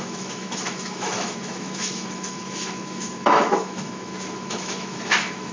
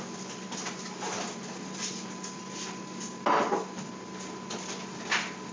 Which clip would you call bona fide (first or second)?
second